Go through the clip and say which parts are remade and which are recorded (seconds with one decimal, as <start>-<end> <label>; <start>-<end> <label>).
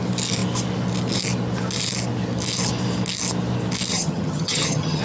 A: 0.0-3.9 recorded; 3.9-5.0 remade